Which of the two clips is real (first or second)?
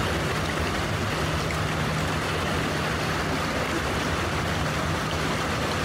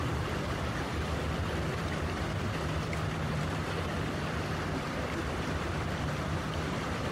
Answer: first